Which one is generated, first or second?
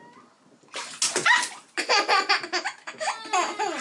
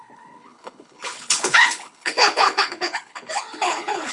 second